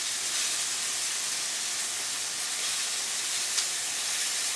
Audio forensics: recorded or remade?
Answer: recorded